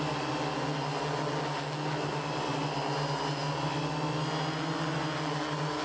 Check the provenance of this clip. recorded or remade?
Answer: recorded